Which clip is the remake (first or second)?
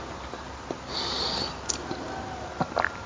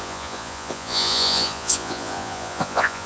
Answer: second